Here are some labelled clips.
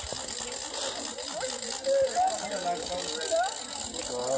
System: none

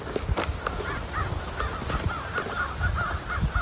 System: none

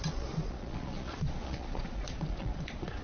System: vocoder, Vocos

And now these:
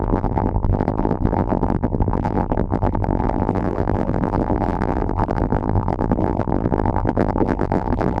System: vocoder, BigVGAN v2